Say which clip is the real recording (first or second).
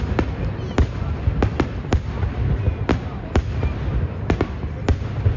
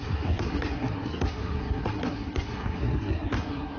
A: first